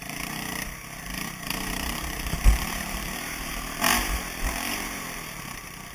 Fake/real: fake